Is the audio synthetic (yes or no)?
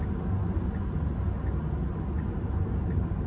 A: no